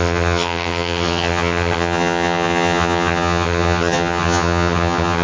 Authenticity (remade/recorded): remade